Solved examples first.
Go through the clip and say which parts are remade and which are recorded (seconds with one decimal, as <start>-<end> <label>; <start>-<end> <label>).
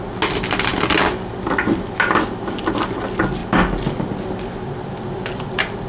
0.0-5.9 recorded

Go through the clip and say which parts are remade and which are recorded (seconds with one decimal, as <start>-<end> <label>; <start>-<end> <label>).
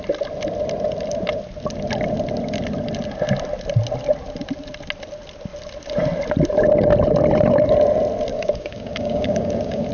0.0-8.3 recorded; 8.3-9.9 remade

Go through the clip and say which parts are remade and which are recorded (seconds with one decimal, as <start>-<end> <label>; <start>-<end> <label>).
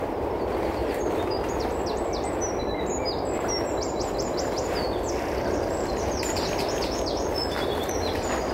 0.0-8.5 recorded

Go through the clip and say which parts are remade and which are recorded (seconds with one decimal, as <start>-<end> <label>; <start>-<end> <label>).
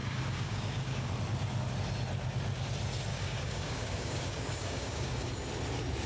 0.0-1.1 remade; 1.1-3.1 recorded; 3.1-5.3 remade; 5.3-6.1 recorded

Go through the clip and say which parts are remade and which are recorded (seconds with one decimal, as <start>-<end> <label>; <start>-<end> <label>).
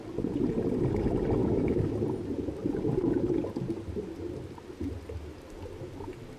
0.0-1.4 recorded; 1.4-1.9 remade; 1.9-6.4 recorded